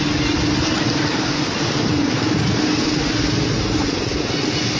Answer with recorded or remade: recorded